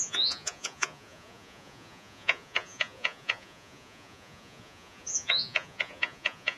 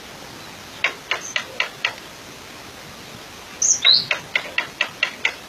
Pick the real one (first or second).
second